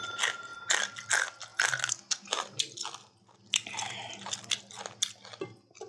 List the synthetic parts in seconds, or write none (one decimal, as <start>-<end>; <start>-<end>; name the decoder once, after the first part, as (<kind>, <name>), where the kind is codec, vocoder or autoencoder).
none